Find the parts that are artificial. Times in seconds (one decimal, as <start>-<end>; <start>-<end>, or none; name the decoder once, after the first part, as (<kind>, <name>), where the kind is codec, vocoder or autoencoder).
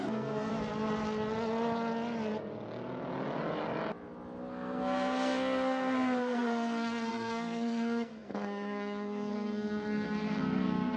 0.0-0.5 (codec, SNAC); 4.5-11.0